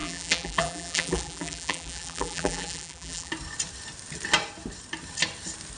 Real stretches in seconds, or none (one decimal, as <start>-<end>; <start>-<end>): 3.3-5.8